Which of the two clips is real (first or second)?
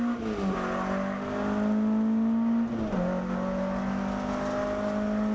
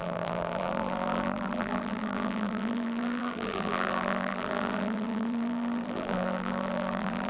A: first